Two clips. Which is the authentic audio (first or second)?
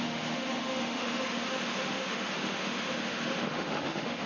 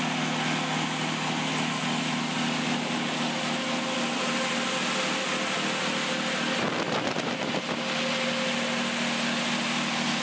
second